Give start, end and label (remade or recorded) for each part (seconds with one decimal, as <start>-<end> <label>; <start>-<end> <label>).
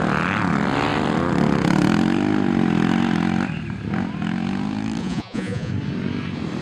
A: 0.0-5.0 recorded; 5.0-5.7 remade; 5.7-6.6 recorded